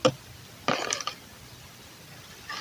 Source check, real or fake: real